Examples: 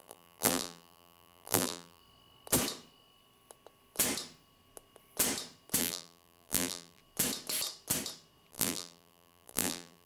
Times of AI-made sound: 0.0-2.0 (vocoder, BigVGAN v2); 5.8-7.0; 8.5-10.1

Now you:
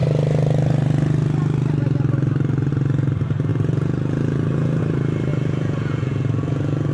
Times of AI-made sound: 3.5-4.8 (vocoder, Vocos); 5.3-6.9